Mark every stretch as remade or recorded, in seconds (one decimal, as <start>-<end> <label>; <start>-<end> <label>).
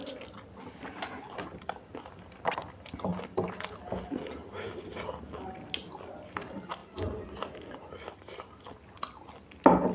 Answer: 0.0-9.9 recorded